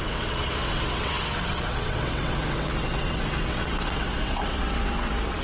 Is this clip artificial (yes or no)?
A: yes